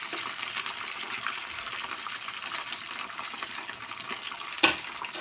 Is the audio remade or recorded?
remade